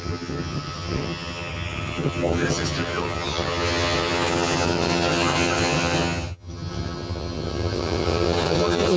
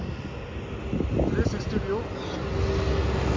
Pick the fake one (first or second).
first